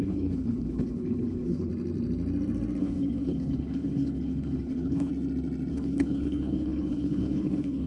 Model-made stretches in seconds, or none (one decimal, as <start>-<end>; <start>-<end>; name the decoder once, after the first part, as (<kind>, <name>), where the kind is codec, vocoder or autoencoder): 0.0-1.7 (codec, HILCodec); 2.8-5.1; 5.7-7.9